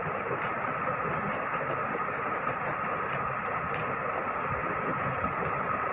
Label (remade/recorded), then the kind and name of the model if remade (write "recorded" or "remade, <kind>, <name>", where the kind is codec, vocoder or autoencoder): recorded